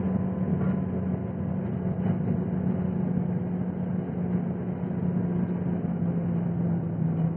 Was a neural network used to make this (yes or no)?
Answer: no